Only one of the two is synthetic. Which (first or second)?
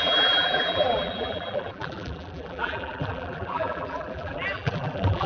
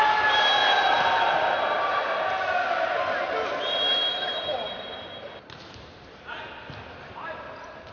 first